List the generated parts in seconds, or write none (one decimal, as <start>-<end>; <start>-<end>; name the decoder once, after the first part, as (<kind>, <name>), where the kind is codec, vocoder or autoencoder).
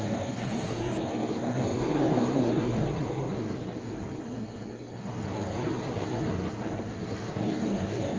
0.0-8.2 (codec, SNAC)